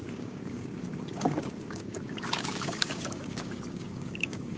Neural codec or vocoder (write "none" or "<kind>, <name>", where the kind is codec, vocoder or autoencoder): codec, DAC